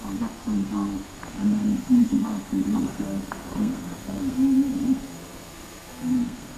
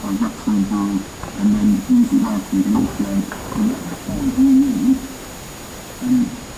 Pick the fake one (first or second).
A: first